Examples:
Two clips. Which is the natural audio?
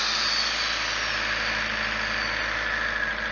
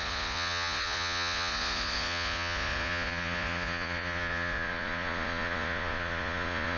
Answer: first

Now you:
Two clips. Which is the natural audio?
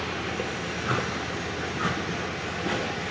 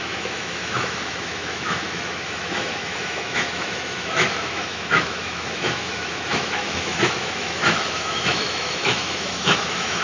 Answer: first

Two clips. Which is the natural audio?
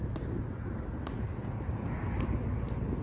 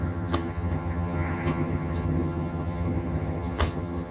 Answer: first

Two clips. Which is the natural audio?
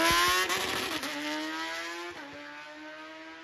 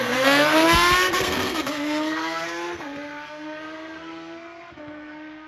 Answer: first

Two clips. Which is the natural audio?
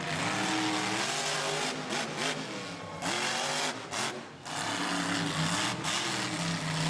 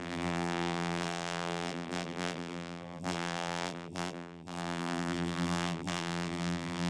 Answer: first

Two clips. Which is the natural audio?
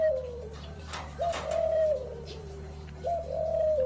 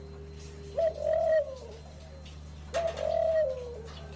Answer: second